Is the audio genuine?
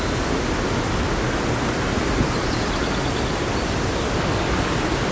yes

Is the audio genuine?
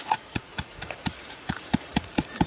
no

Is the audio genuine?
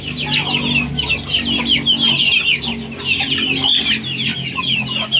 yes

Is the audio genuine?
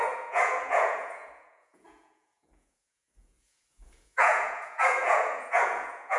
no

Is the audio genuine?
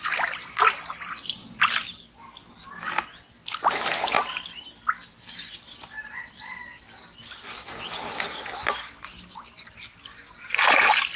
yes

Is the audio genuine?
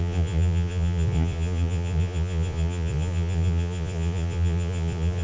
no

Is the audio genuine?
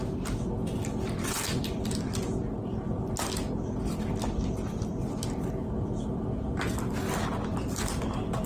yes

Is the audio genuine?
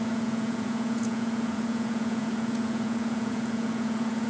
no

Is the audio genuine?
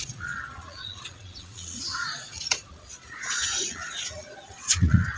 no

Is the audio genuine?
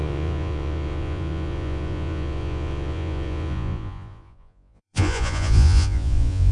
no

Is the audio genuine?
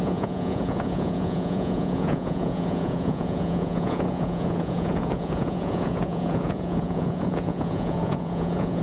no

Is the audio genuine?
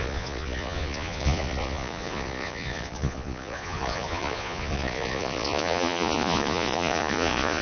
no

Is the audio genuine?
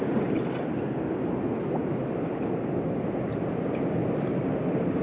yes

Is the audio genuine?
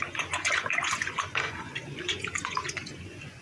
no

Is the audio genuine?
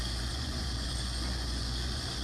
no